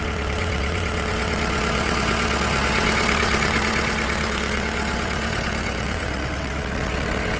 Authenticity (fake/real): fake